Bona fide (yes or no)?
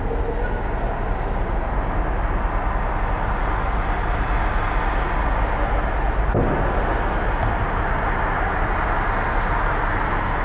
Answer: yes